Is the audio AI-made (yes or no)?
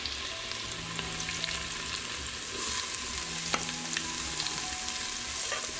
no